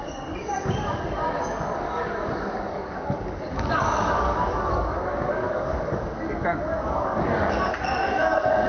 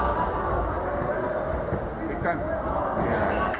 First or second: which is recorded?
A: second